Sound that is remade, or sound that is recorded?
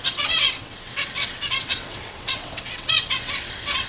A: remade